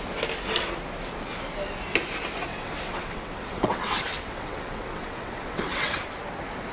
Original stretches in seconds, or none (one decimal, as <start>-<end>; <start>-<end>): 0.0-2.5; 6.1-6.7